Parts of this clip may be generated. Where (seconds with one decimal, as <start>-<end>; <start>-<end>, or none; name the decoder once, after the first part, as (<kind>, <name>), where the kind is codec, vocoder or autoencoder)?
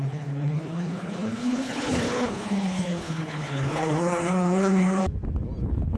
0.0-5.0 (codec, HILCodec); 5.6-6.0